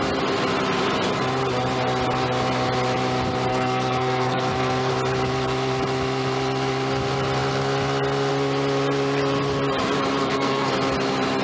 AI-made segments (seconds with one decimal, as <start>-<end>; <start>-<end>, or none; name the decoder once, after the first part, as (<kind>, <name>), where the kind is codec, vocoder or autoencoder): 3.5-4.9 (codec, SNAC); 10.2-10.7